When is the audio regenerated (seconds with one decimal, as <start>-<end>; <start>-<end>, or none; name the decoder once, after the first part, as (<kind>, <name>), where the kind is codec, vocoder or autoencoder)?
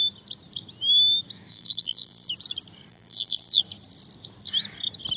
1.5-2.3 (vocoder, BigVGAN v2); 2.9-3.6